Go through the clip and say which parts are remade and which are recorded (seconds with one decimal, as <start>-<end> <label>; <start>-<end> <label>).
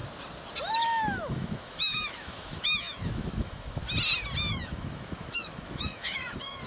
0.0-0.7 recorded; 0.7-3.8 remade; 3.8-4.5 recorded; 4.5-6.7 remade